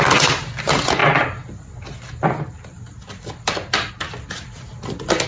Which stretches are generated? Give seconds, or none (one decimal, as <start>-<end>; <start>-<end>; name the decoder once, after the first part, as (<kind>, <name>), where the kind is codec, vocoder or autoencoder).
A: none